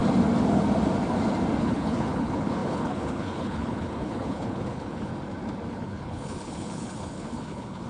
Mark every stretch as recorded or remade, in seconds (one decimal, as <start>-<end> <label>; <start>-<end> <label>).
0.0-1.6 recorded; 1.6-5.1 remade; 5.1-5.7 recorded; 5.7-7.9 remade